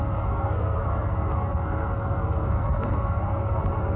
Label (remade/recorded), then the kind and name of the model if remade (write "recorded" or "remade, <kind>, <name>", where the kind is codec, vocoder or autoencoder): remade, codec, SNAC